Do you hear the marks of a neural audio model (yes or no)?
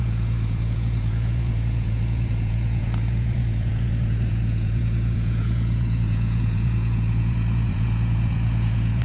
yes